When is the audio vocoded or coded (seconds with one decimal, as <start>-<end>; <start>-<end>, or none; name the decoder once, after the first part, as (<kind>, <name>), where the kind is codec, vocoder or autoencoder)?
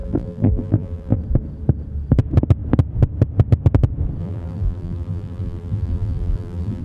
0.0-1.2 (vocoder, BigVGAN v2); 4.2-6.8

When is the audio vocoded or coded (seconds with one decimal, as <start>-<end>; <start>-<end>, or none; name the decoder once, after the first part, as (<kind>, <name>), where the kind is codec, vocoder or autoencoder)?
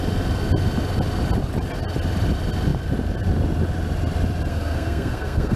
4.5-5.6 (codec, SNAC)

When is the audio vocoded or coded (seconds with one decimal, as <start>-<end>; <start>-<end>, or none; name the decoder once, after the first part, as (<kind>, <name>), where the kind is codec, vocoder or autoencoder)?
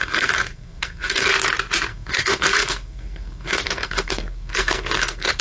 0.0-1.3 (codec, SNAC); 1.9-5.4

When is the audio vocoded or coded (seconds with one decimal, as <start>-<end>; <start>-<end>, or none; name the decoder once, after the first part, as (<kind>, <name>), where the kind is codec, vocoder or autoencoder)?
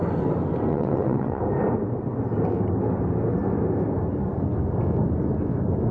0.7-1.4 (vocoder, WaveNeXt)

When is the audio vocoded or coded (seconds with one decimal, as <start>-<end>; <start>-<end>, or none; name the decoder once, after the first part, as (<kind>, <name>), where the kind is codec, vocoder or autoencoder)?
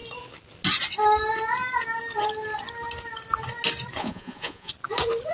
4.0-4.7 (vocoder, Vocos)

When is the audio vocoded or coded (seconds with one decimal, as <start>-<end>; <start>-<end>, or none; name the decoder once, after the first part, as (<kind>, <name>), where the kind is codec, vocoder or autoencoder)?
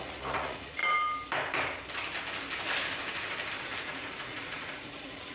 0.0-0.8 (vocoder, Vocos); 3.6-5.3